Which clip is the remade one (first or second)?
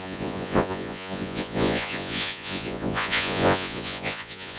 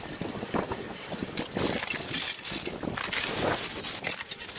first